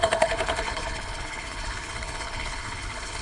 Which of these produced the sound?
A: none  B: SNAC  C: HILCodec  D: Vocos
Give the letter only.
C